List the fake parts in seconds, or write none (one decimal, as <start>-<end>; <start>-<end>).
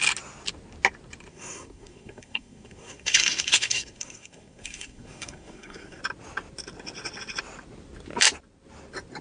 1.3-6.0